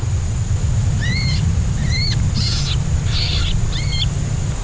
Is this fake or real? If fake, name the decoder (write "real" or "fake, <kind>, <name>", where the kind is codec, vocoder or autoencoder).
real